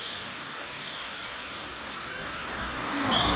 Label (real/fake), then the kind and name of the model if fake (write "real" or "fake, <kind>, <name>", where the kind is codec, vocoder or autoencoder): fake, codec, DAC